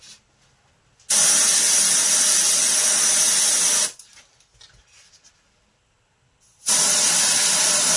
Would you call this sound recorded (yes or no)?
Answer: yes